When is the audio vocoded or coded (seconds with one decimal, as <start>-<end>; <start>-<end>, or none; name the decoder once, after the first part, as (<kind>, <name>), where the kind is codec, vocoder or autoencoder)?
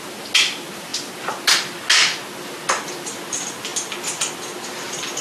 none